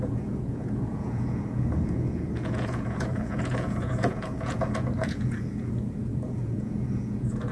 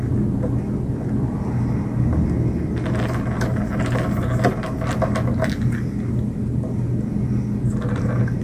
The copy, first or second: first